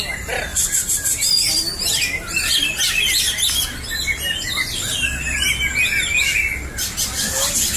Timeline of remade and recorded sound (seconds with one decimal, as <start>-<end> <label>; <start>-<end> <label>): 0.0-0.5 recorded; 0.5-2.6 remade; 2.6-7.8 recorded